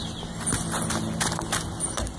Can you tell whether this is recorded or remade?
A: recorded